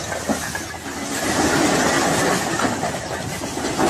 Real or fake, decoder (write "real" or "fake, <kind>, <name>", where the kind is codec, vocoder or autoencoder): real